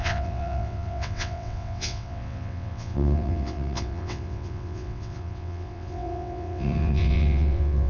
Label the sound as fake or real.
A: fake